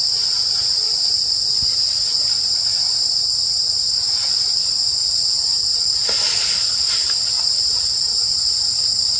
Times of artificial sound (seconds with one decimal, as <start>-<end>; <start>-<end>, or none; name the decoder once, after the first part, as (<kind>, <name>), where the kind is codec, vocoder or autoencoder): 2.7-4.7 (vocoder, Vocos)